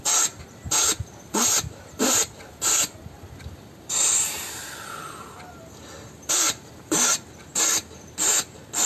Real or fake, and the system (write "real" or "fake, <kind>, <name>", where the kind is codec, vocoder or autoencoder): real